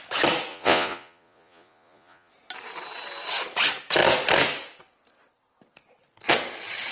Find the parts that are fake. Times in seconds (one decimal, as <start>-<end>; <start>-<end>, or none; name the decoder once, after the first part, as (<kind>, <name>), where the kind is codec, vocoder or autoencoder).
0.5-2.3 (vocoder, Vocos)